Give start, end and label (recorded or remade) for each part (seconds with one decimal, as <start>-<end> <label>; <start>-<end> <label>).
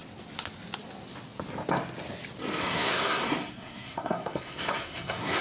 0.0-2.6 recorded; 2.6-5.4 remade